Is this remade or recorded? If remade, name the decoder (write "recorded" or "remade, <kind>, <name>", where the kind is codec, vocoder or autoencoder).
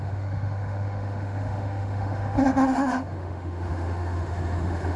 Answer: remade, autoencoder, DAC-VAE